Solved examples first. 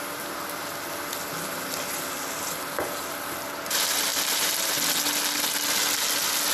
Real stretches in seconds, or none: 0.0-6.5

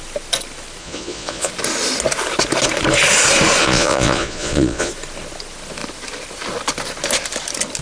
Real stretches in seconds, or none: 0.0-0.8; 1.5-3.6; 4.9-7.8

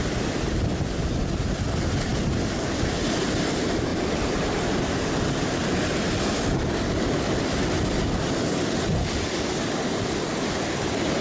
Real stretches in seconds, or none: 0.0-11.2

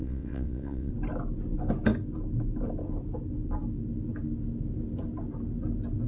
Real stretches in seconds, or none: 0.9-6.1

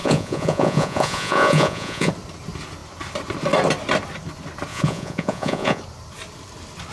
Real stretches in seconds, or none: 2.1-4.7; 5.8-6.9

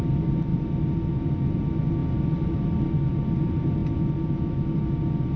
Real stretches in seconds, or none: 0.0-5.4

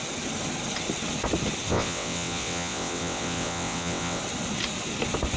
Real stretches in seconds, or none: 0.0-1.7; 4.2-5.4